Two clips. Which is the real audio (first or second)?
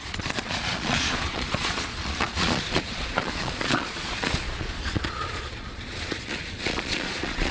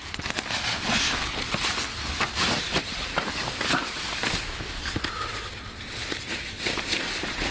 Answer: second